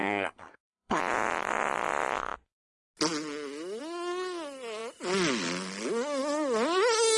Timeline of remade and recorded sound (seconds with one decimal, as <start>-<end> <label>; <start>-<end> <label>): 0.0-1.0 remade; 1.0-7.2 recorded